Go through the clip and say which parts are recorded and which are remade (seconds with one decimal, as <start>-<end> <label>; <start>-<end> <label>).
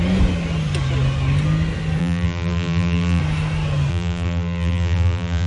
0.0-2.0 recorded; 2.0-3.2 remade; 3.2-3.9 recorded; 3.9-5.5 remade